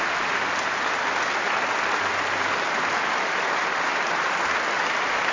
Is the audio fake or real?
real